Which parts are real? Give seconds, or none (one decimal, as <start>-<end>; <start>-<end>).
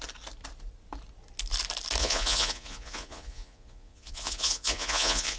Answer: 0.0-2.0